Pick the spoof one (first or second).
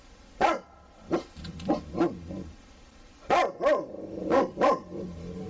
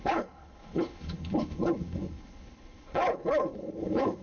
second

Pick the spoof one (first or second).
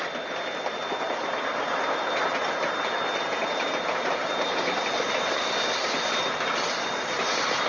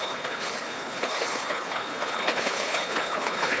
second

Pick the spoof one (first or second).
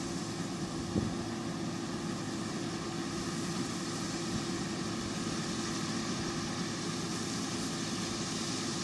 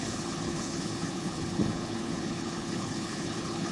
second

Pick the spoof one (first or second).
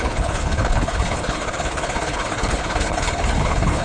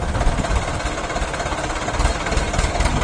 first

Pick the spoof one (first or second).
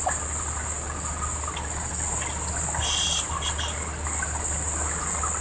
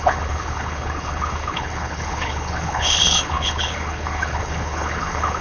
second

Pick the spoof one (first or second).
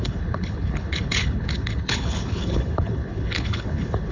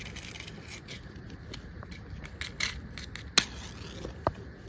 first